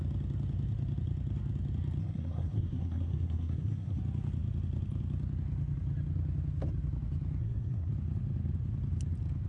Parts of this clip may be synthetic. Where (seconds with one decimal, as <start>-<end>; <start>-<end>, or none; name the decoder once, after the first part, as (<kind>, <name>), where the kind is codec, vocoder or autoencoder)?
2.0-4.0 (codec, SNAC); 7.4-7.9